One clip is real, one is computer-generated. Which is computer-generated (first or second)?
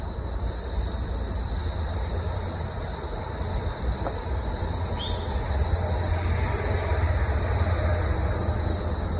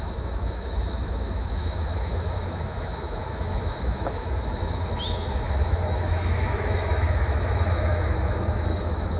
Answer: second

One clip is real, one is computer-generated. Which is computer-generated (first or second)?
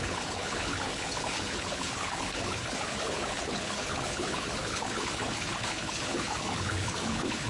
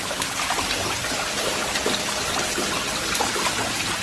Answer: first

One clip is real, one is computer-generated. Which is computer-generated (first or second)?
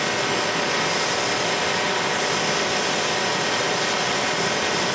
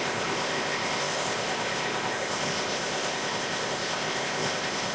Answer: second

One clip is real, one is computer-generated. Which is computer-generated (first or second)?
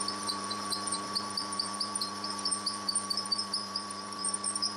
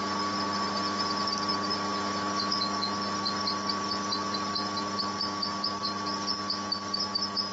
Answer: first